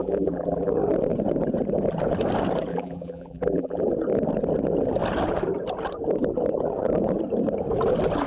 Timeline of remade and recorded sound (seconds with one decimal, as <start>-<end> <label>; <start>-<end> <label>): 0.0-0.7 remade; 0.7-2.7 recorded; 2.7-3.8 remade; 3.8-8.3 recorded